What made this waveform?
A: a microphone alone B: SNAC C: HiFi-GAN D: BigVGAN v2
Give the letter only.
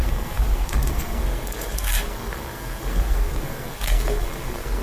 B